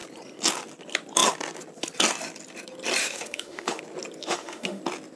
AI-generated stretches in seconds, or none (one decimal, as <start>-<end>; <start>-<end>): 3.0-3.8; 4.2-4.8